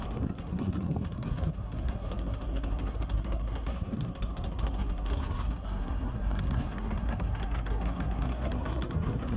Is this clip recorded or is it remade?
remade